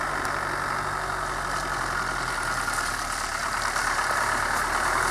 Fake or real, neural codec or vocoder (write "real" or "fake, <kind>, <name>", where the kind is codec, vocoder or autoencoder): real